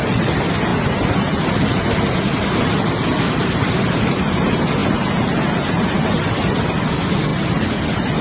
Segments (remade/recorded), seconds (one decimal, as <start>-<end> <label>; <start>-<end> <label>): 0.0-8.2 recorded

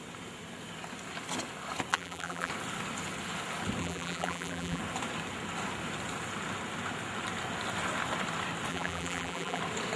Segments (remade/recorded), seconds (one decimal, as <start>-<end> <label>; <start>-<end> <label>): 0.0-1.9 recorded; 1.9-2.5 remade; 2.5-3.8 recorded; 3.8-4.8 remade; 4.8-8.7 recorded; 8.7-9.6 remade; 9.6-10.0 recorded

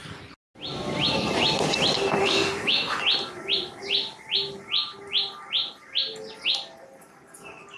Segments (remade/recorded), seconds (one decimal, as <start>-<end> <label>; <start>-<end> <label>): 0.0-2.2 recorded; 2.2-3.0 remade; 3.0-7.8 recorded

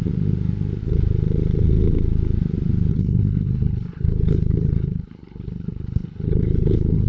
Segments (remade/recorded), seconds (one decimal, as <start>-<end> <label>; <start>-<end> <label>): 0.0-2.9 recorded; 2.9-7.1 remade

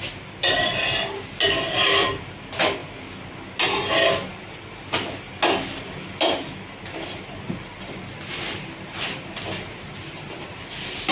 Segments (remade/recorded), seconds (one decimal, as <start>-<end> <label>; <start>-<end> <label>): 0.0-11.1 recorded